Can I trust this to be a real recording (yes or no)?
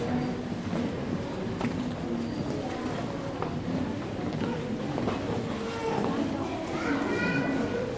yes